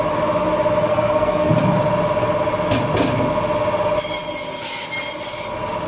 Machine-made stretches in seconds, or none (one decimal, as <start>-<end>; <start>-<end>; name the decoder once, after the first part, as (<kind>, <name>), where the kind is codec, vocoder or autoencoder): 0.9-1.5 (codec, SNAC)